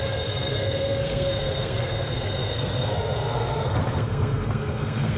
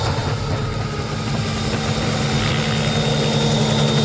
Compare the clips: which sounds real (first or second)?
second